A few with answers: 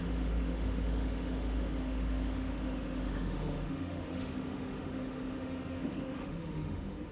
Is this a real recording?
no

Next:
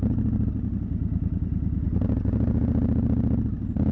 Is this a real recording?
yes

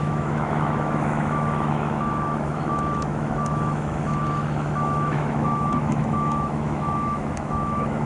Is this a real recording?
no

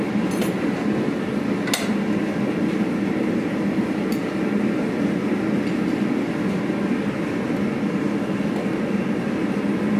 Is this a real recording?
yes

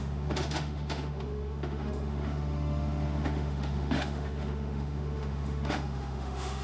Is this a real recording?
no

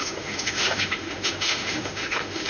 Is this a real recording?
no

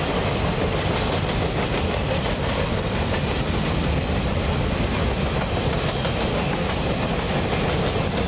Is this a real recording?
yes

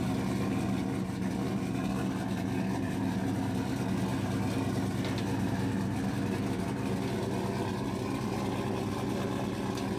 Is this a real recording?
yes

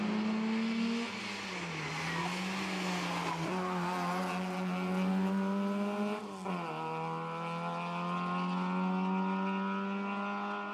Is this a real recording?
yes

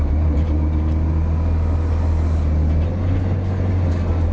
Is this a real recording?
yes